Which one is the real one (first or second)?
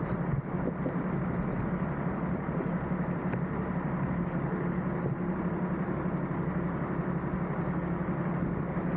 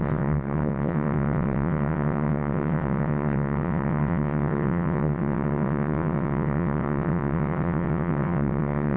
first